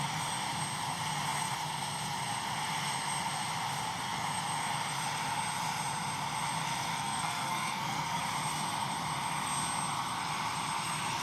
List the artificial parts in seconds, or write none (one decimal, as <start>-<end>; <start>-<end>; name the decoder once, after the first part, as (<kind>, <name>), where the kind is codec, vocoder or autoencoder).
6.9-8.2 (codec, SNAC)